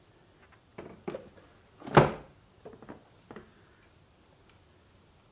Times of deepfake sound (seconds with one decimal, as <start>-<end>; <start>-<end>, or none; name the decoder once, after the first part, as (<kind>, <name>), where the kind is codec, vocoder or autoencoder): none